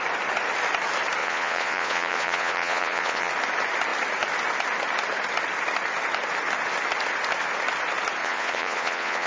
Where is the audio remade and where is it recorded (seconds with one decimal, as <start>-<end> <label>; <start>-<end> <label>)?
0.0-1.2 recorded; 1.2-3.3 remade; 3.3-8.2 recorded; 8.2-9.3 remade